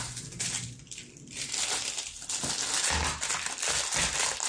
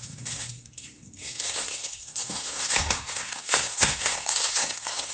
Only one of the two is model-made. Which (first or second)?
second